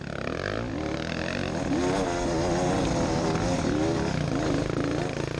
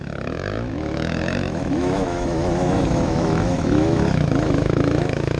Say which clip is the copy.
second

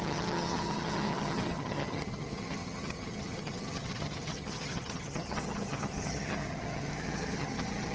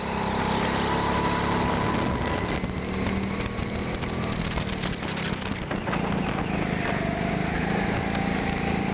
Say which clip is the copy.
first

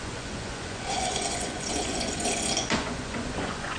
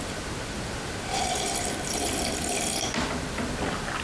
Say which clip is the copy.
first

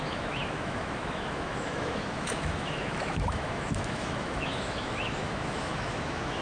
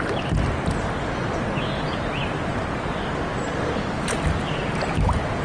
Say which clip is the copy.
first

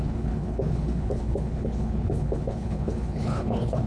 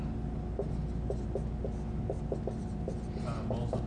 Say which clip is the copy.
first